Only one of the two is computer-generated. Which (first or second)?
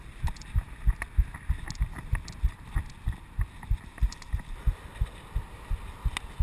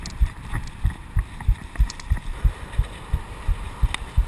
second